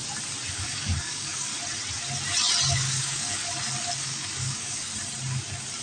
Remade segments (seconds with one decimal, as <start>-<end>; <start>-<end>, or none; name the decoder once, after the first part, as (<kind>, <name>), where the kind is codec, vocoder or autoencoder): 0.5-1.5 (codec, DAC); 2.7-3.4; 4.0-4.9